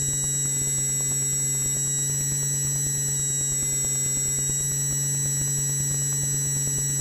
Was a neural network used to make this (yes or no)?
no